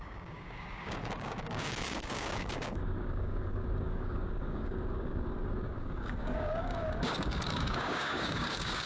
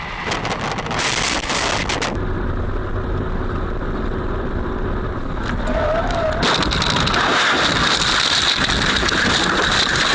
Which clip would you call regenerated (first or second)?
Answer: first